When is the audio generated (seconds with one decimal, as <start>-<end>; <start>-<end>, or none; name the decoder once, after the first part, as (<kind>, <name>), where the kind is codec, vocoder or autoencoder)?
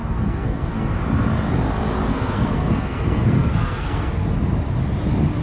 0.0-1.0 (codec, SNAC); 2.1-4.1